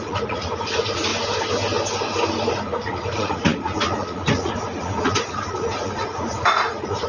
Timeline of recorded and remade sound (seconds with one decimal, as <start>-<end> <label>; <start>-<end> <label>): 0.0-1.1 remade; 1.1-2.5 recorded; 2.5-7.1 remade

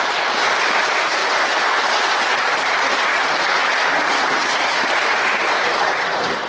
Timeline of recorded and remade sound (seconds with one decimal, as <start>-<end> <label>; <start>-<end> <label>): 0.0-1.2 remade; 1.2-2.7 recorded; 2.7-3.1 remade; 3.1-4.2 recorded; 4.2-6.5 remade

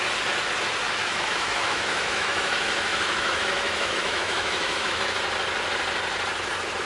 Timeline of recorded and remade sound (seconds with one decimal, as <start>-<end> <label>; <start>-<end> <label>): 0.0-1.0 recorded; 1.0-5.1 remade; 5.1-6.9 recorded